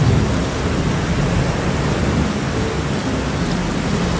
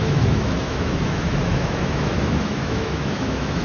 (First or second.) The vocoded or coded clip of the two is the second